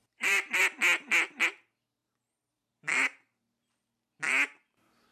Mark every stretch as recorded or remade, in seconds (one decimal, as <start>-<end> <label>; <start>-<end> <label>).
0.0-0.6 remade; 0.6-2.0 recorded; 2.0-3.8 remade; 3.8-5.1 recorded